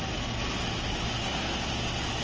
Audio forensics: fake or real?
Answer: real